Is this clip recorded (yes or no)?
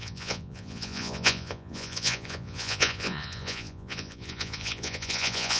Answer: no